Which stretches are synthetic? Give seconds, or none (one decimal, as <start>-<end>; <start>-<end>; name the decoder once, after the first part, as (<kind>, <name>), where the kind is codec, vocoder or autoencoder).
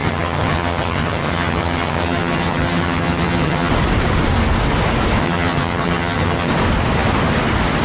0.0-3.7 (vocoder, HiFi-GAN); 5.2-6.5